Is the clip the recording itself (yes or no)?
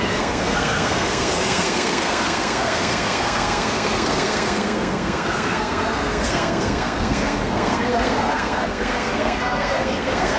no